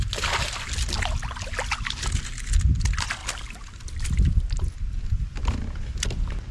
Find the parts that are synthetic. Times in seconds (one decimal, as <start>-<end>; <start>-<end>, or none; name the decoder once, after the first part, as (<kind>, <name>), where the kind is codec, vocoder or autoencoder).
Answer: none